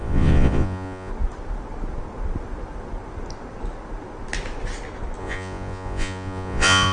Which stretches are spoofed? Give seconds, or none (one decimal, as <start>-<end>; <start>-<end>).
0.0-1.1; 5.2-6.9